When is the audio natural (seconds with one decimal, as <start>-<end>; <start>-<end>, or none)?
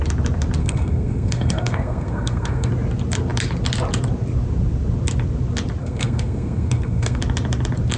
0.0-0.6; 2.7-5.8; 7.2-8.0